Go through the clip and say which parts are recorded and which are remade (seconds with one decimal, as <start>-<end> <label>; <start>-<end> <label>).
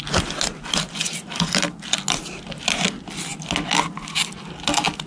0.0-5.1 recorded